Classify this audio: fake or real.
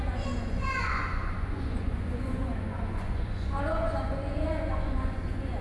fake